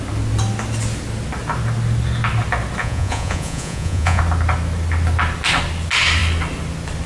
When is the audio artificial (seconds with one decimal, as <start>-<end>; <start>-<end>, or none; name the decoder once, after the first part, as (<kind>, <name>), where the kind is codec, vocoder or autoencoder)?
2.8-4.2 (vocoder, Vocos)